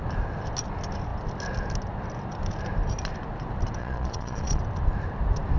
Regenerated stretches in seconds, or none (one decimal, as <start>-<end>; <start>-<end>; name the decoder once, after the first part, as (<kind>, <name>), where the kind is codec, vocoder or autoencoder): 3.8-4.6 (vocoder, Vocos)